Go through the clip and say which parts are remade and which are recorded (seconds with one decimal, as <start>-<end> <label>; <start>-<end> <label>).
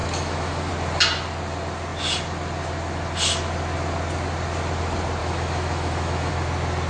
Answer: 0.0-0.7 remade; 0.7-5.2 recorded; 5.2-6.3 remade; 6.3-6.9 recorded